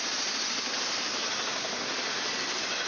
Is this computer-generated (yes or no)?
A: no